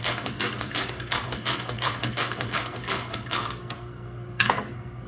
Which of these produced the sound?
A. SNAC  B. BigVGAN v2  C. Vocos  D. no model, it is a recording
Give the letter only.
A